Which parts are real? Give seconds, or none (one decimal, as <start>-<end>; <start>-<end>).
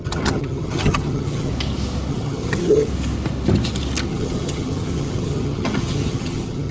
1.5-2.1; 2.9-4.1